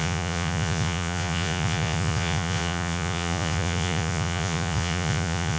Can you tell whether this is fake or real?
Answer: fake